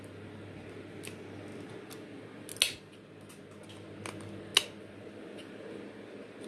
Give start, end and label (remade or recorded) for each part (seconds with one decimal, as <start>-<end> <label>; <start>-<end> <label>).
0.0-6.5 recorded